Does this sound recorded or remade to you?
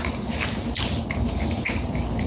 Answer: recorded